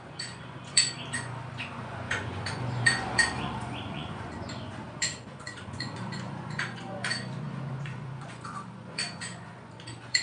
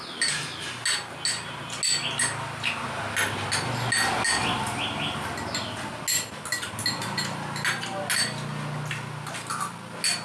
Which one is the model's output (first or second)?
first